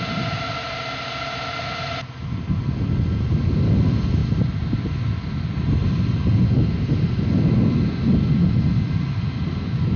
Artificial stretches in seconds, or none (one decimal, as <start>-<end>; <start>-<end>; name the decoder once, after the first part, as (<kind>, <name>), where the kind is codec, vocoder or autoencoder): none